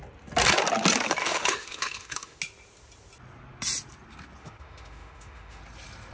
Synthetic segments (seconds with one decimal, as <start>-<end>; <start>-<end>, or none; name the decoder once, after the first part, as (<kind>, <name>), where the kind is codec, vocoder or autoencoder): 1.2-2.4 (autoencoder, DAC-VAE); 4.4-5.6

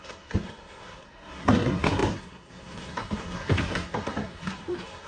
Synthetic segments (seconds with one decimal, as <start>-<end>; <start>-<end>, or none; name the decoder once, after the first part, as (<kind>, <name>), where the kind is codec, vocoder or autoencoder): 0.0-5.1 (codec, SNAC)